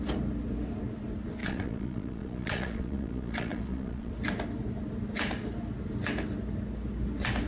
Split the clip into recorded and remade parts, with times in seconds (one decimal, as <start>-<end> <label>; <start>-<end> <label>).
0.0-1.4 recorded; 1.4-4.1 remade; 4.1-7.5 recorded